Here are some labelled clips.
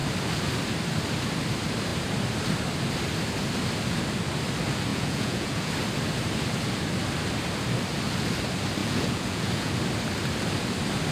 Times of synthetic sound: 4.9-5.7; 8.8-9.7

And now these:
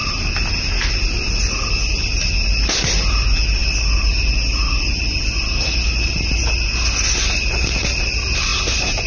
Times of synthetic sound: none

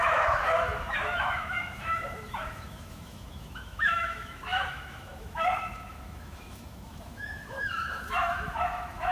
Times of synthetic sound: 0.0-9.1

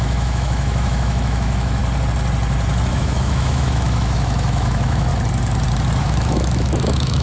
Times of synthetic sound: 0.0-1.8; 2.9-5.1; 6.0-7.2

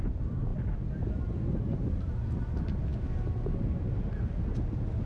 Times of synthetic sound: none

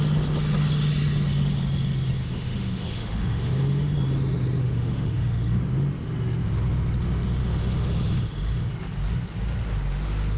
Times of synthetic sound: 2.2-3.9; 4.6-5.6; 7.4-8.7

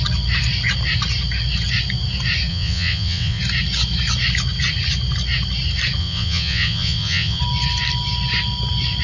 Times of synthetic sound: 2.5-3.4; 6.0-7.4

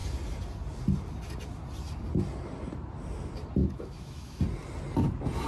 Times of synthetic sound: 3.6-4.4